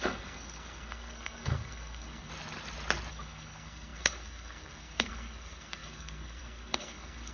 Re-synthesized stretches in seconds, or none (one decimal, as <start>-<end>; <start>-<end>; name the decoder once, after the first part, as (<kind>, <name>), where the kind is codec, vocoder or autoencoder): 0.0-2.3 (codec, SNAC); 3.1-7.3